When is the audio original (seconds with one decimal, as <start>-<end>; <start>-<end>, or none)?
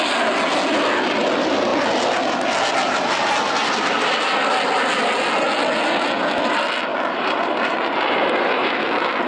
0.0-6.9; 8.8-9.3